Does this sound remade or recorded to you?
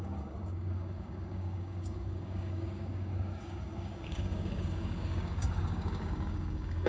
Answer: remade